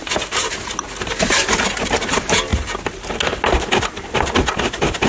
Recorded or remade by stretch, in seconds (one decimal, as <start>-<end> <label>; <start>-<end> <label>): 0.0-5.1 recorded